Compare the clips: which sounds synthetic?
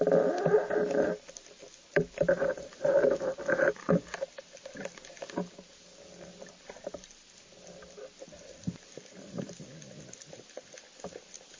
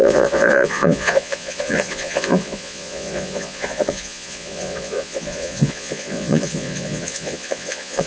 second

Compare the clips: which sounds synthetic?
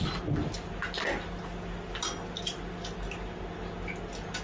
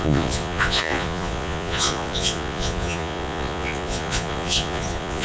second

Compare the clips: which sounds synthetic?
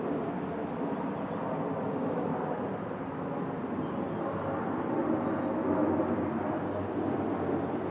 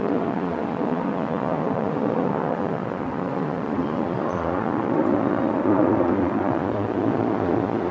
second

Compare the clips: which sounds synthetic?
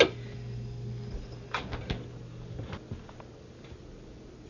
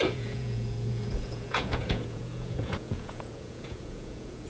second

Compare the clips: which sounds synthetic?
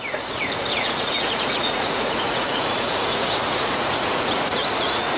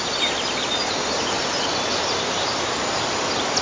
first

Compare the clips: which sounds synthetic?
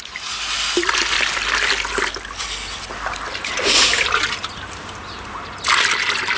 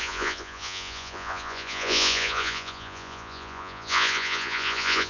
second